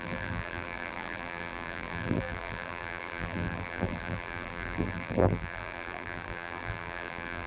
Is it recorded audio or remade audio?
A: remade